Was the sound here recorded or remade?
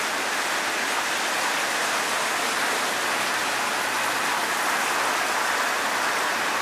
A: recorded